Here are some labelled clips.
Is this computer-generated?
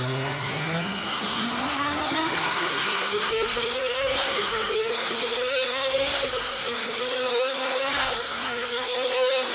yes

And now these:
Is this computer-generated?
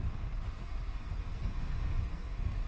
yes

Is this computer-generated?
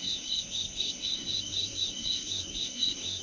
yes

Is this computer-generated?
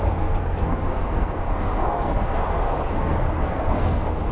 yes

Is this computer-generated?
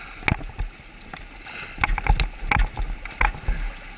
no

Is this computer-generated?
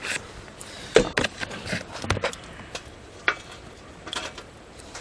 no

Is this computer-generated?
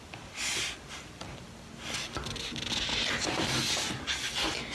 no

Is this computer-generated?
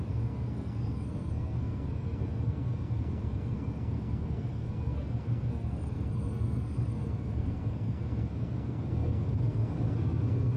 yes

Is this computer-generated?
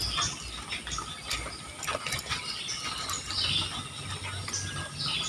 no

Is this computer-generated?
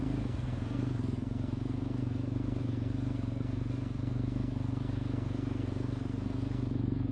yes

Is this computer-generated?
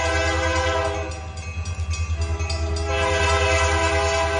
no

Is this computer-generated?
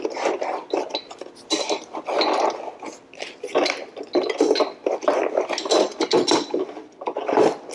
no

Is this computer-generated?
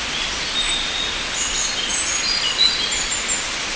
no